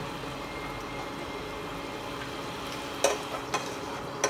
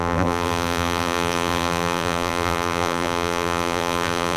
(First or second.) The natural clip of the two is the first